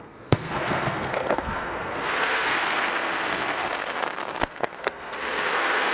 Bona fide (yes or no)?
no